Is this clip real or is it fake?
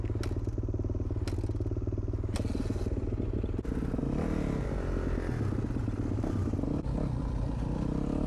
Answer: real